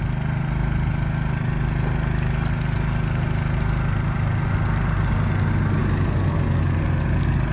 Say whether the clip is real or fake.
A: real